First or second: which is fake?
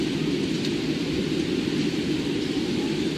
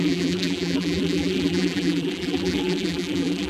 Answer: second